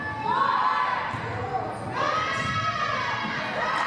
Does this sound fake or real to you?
real